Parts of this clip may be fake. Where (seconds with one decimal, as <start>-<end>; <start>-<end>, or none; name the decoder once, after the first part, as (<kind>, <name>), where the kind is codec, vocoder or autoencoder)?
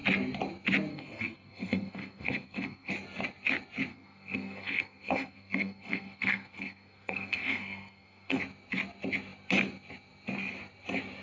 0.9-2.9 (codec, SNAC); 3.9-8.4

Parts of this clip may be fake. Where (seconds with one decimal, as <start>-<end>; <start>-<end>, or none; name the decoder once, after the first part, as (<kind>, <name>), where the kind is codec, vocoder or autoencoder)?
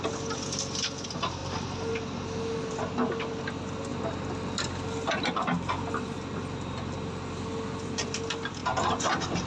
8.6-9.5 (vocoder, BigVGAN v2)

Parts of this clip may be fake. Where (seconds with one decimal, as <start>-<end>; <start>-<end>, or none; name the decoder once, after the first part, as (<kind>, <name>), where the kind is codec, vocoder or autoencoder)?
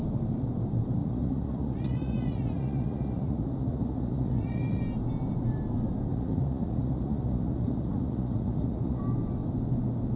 1.0-4.8 (vocoder, Vocos); 6.1-9.0